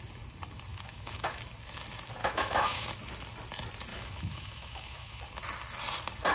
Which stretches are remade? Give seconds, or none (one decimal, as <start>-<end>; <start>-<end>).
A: 0.7-1.4; 2.2-2.9; 3.9-5.2